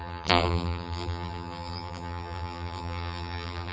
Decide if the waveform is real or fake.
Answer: fake